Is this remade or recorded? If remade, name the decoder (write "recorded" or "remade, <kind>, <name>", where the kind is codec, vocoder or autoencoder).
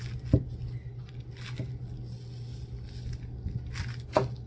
recorded